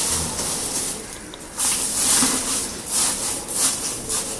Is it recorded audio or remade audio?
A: recorded